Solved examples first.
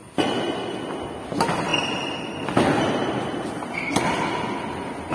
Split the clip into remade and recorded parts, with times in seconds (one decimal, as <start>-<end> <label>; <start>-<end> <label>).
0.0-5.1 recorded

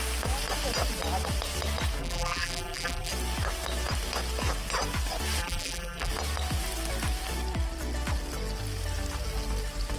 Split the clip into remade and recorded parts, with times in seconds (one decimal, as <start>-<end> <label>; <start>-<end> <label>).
0.0-2.0 recorded; 2.0-3.1 remade; 3.1-5.4 recorded; 5.4-6.1 remade; 6.1-10.0 recorded

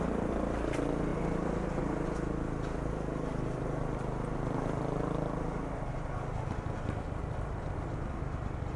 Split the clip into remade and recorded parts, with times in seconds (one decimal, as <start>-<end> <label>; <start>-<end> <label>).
0.0-8.8 recorded

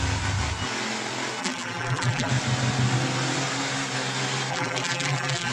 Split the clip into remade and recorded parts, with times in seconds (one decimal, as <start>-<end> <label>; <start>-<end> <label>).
0.0-1.4 recorded; 1.4-2.3 remade; 2.3-4.5 recorded; 4.5-5.5 remade